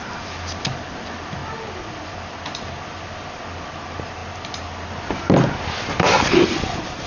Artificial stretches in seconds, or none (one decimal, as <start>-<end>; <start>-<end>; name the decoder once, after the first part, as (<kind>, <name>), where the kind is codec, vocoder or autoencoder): none